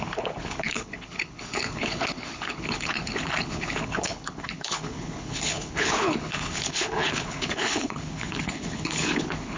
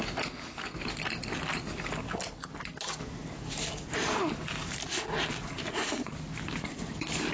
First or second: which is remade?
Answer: first